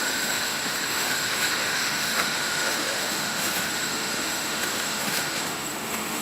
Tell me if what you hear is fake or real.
fake